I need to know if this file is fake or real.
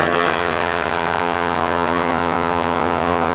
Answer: fake